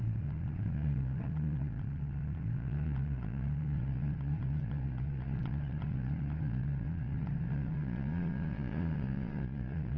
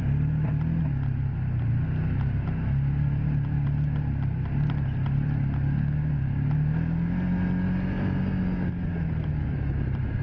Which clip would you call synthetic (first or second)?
first